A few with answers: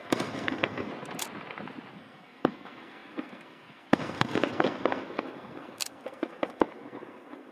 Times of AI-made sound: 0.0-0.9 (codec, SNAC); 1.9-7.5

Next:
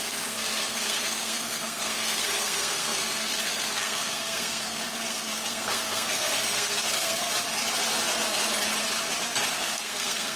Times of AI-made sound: 0.0-7.3 (codec, SNAC); 9.5-10.4

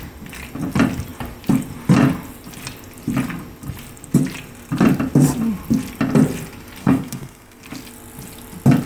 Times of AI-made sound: 6.8-7.6 (codec, SNAC)

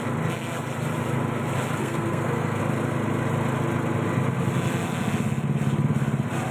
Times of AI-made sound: 1.8-2.6 (codec, SNAC)

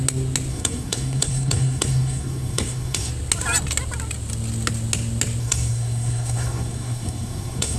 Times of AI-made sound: 0.5-3.1 (codec, SNAC); 5.4-7.8

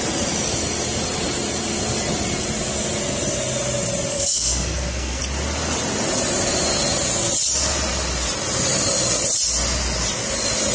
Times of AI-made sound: 4.1-5.2 (codec, SNAC)